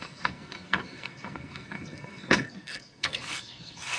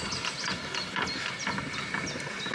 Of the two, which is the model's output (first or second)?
first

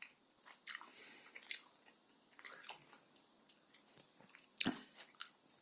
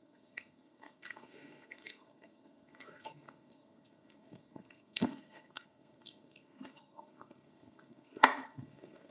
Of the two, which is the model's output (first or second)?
second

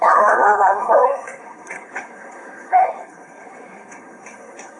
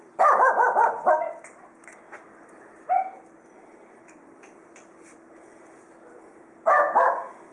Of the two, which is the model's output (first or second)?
first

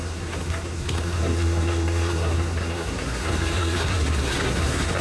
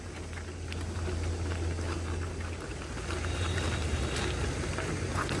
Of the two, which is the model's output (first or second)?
first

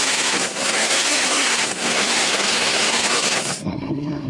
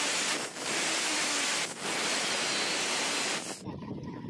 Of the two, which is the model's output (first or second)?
first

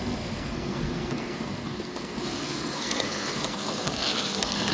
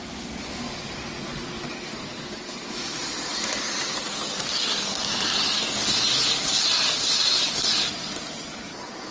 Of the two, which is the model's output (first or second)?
first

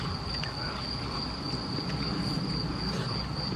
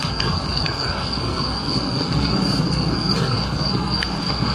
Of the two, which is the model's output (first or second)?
second